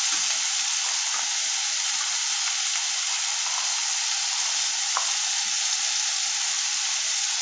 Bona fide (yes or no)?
yes